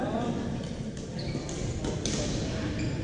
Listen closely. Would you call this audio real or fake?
real